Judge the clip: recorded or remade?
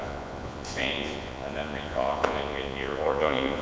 remade